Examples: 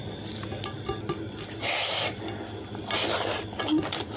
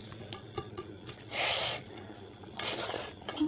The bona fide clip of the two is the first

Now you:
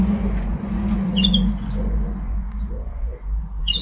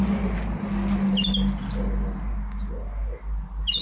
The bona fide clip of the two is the second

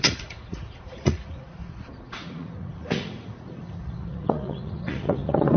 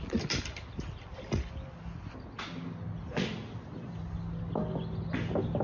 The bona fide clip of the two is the second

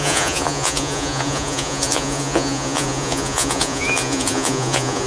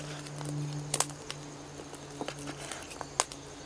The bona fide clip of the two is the second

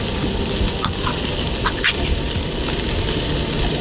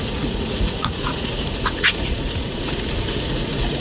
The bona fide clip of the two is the first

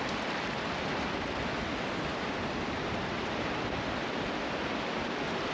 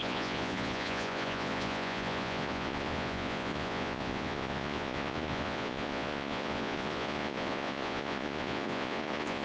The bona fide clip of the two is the first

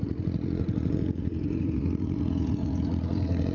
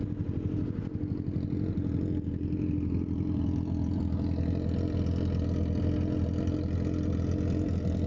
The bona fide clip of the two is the second